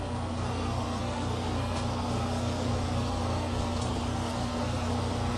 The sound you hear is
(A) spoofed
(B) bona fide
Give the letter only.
A